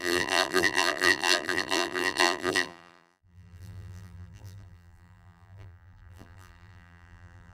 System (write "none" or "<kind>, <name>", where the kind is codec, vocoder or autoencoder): vocoder, BigVGAN v2